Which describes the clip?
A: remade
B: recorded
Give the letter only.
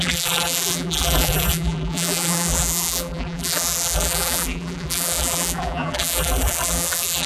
A